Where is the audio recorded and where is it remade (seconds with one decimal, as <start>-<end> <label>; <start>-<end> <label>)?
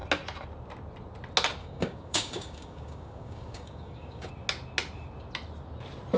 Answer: 0.0-1.6 recorded; 1.6-4.3 remade; 4.3-6.2 recorded